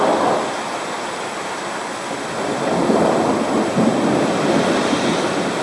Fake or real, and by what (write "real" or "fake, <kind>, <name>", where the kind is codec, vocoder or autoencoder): real